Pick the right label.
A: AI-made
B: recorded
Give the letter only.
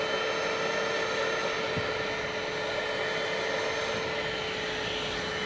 B